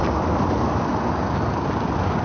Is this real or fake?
real